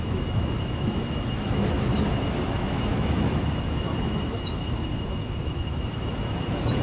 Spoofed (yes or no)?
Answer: yes